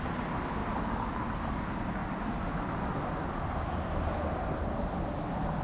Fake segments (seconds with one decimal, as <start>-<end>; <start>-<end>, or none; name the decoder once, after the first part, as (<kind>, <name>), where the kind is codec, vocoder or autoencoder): none